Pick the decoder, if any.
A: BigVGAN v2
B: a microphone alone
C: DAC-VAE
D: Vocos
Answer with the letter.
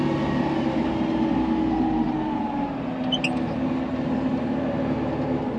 B